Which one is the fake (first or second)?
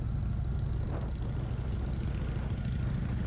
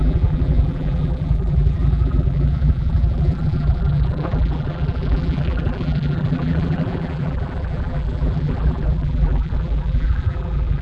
second